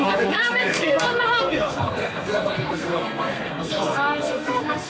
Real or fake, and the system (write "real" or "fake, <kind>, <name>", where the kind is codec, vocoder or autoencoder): fake, codec, SNAC